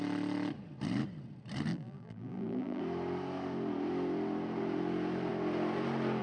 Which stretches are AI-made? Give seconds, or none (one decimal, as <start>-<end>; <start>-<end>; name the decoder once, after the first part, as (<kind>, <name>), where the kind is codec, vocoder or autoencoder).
1.7-2.8 (vocoder, BigVGAN v2)

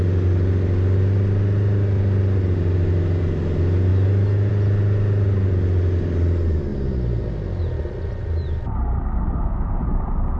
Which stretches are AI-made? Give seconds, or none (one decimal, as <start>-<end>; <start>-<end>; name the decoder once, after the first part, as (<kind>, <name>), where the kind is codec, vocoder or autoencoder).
3.9-4.5 (autoencoder, DAC-VAE)